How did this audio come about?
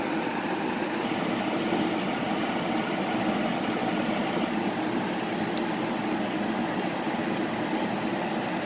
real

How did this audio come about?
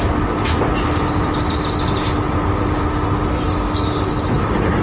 real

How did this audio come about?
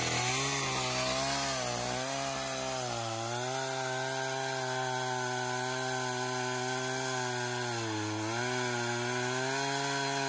real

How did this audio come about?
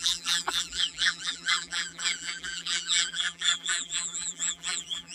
fake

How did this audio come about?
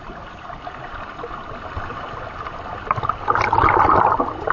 fake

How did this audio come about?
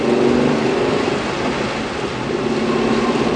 real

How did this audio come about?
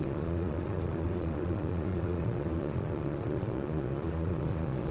fake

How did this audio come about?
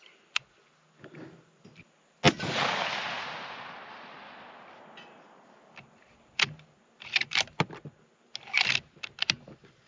real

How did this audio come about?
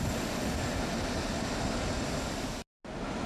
real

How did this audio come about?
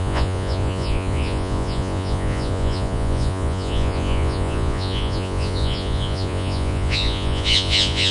fake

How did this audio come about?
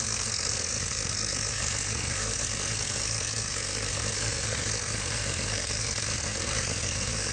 fake